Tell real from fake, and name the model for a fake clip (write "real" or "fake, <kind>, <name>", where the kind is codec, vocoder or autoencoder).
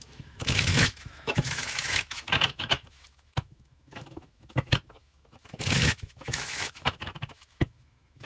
fake, autoencoder, DAC-VAE